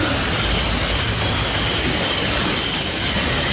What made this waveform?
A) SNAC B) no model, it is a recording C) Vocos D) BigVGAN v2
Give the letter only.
B